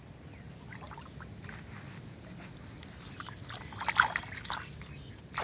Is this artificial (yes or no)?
no